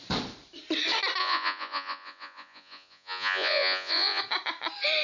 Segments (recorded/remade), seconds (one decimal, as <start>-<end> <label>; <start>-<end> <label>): 0.0-1.2 recorded; 1.2-4.2 remade; 4.2-5.0 recorded